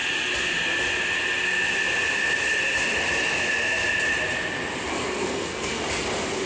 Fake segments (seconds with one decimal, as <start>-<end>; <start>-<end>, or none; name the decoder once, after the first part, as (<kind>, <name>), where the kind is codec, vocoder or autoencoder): 4.9-5.8 (codec, SNAC)